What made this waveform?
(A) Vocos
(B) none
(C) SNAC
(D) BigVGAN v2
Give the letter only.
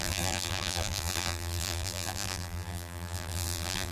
D